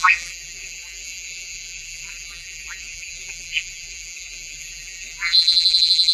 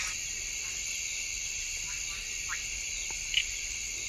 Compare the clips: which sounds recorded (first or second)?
second